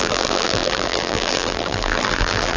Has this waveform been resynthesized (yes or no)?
yes